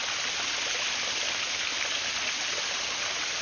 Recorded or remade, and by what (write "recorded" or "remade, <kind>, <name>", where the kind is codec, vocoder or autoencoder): recorded